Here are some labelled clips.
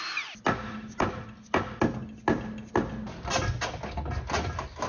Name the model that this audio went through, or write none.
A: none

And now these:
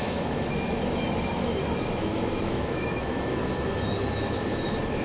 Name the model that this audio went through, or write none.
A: autoencoder, DAC-VAE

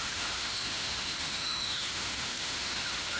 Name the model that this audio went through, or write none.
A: autoencoder, DAC-VAE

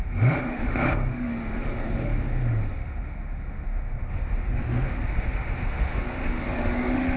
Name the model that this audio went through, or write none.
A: autoencoder, DAC-VAE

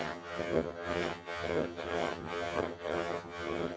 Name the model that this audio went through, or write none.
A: vocoder, HiFi-GAN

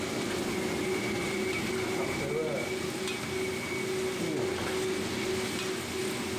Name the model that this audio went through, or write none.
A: none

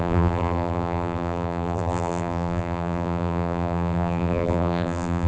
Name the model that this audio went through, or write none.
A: vocoder, BigVGAN v2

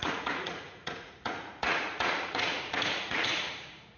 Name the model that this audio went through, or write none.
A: vocoder, Vocos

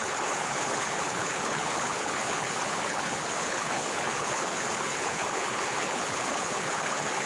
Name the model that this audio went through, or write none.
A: codec, HILCodec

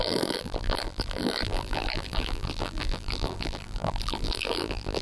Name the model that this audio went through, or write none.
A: vocoder, BigVGAN v2